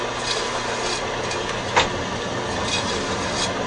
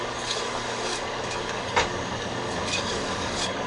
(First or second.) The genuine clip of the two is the first